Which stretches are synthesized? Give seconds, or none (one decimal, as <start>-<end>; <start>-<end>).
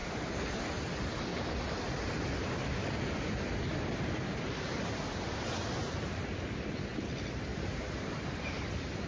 0.0-0.5; 1.3-5.5; 7.5-8.6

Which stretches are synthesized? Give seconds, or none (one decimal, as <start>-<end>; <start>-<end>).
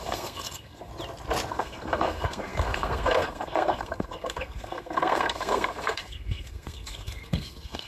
0.0-0.9; 1.5-7.9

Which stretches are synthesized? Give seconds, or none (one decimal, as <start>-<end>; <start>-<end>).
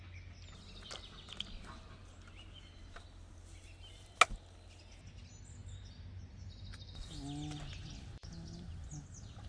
none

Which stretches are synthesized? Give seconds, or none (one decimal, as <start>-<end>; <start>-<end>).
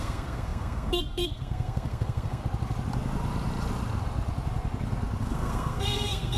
0.0-2.4; 5.2-6.4